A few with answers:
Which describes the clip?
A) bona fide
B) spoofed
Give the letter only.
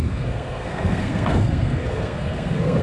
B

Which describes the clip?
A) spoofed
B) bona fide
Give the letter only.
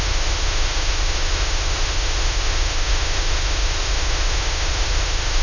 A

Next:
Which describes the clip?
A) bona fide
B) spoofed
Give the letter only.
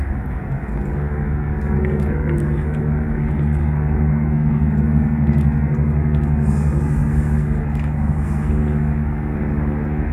B